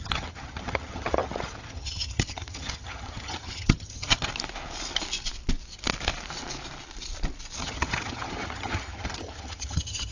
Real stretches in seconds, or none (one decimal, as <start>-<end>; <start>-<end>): 4.3-7.6

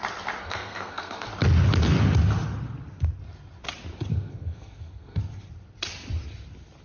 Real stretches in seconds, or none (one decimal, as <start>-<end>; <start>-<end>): 0.0-0.4; 1.3-4.1; 5.2-6.8

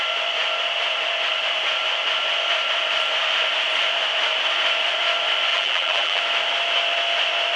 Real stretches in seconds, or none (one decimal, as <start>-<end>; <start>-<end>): 0.0-5.5; 6.2-7.6

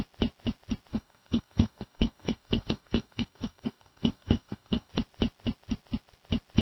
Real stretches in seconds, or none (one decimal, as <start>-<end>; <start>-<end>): 0.0-0.9; 4.9-6.6

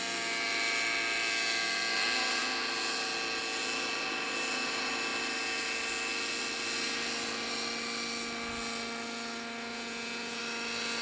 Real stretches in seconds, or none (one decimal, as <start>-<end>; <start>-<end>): 0.0-9.7; 10.4-11.0